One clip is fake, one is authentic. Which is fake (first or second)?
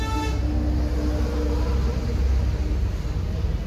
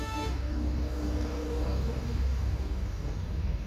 second